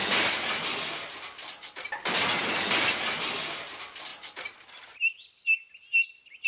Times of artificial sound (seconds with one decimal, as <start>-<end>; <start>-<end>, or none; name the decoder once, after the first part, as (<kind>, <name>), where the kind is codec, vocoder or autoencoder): none